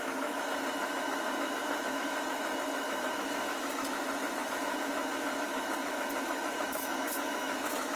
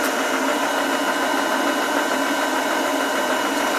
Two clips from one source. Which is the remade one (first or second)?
first